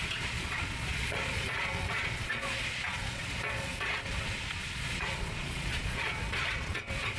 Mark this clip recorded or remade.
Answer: remade